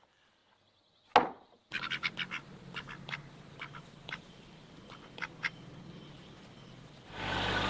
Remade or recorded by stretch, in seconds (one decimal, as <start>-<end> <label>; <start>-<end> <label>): 0.0-7.7 recorded